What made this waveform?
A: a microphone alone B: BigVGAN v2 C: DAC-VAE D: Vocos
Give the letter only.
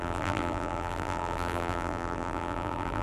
B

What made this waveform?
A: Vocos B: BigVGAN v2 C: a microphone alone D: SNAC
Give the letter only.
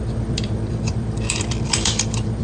B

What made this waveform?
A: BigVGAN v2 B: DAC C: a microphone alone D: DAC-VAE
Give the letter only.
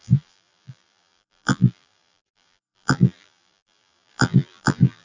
A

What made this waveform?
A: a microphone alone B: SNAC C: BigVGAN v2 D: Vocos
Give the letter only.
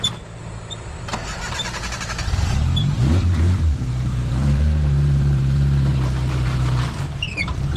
C